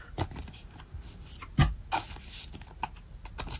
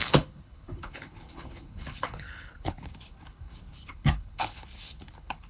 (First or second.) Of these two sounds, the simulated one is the second